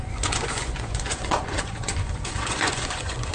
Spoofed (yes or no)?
yes